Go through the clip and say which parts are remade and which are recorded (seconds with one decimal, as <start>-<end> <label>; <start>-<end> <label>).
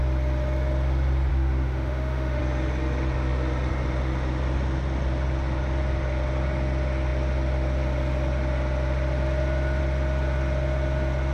0.0-1.3 recorded; 1.3-2.4 remade; 2.4-11.3 recorded